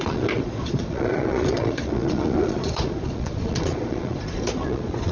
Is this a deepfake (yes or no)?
yes